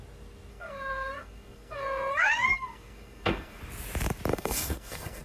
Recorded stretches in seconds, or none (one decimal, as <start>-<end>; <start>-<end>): 0.0-0.5; 3.6-4.3